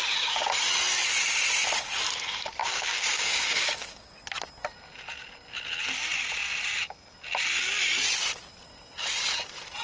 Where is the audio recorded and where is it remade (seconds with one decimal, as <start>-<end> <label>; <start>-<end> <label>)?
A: 0.0-2.6 recorded; 2.6-4.2 remade; 4.2-9.8 recorded